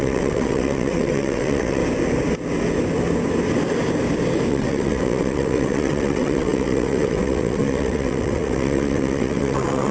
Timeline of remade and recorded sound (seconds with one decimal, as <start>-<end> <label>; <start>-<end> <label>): 0.0-1.8 remade; 1.8-4.5 recorded; 4.5-9.9 remade